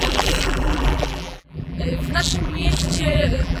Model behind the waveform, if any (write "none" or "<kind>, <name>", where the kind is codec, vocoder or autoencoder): vocoder, BigVGAN v2